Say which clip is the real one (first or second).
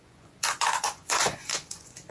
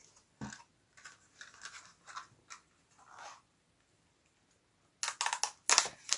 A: second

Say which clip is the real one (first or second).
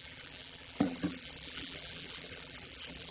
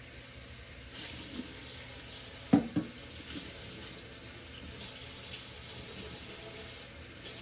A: second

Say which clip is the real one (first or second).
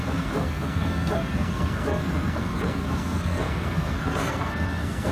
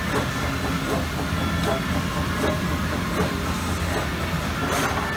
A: second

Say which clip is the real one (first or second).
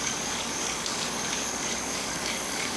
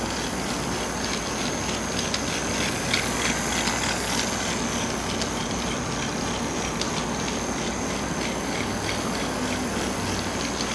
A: second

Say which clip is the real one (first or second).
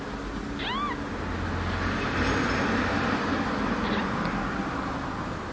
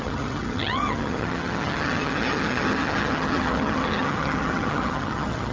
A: first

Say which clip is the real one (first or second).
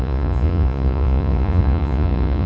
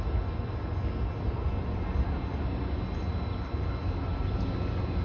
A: second